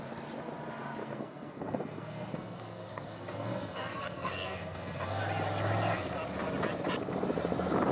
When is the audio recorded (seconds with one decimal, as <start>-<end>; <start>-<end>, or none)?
0.0-1.0; 5.2-7.9